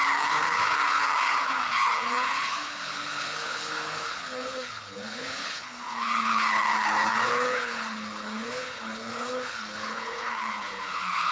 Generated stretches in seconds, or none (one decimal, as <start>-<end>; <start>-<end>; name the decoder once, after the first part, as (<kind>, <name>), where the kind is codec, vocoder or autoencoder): 0.0-11.3 (codec, HILCodec)